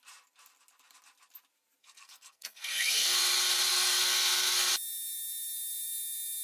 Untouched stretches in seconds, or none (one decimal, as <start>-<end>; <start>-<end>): 0.0-1.8; 3.2-3.7; 4.7-6.4